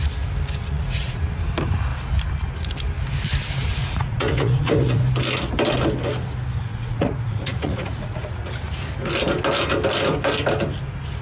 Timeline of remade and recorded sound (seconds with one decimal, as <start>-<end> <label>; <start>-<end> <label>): 0.0-0.6 recorded; 0.6-1.2 remade; 1.2-3.8 recorded; 3.8-5.0 remade; 5.0-6.7 recorded; 6.7-8.5 remade; 8.5-11.2 recorded